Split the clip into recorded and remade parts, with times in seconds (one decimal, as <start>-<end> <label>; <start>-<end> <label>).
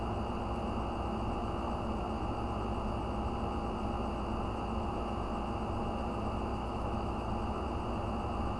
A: 0.0-6.5 recorded; 6.5-7.3 remade; 7.3-8.6 recorded